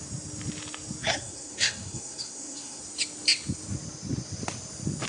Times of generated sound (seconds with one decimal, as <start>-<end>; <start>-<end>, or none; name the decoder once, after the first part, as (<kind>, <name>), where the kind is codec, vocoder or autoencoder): 1.0-2.8 (codec, SNAC)